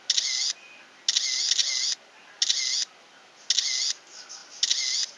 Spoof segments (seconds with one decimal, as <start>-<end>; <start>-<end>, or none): none